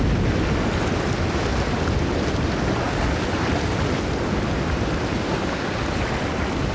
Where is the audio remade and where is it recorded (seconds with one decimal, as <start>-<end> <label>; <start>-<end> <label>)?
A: 0.0-6.7 recorded